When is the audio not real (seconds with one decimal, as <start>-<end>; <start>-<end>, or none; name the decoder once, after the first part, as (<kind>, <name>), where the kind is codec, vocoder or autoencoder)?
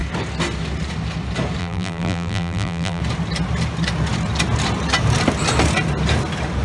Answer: 1.6-3.0 (vocoder, BigVGAN v2)